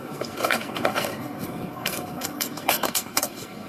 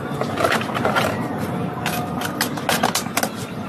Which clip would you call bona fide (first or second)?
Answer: second